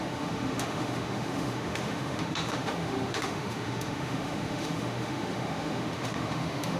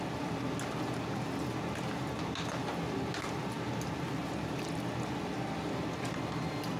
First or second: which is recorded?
second